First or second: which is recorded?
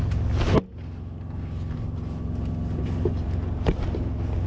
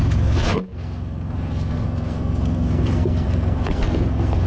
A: first